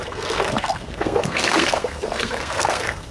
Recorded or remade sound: remade